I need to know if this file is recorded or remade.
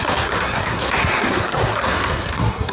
remade